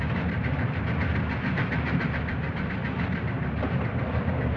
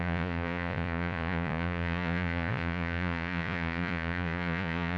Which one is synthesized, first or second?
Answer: second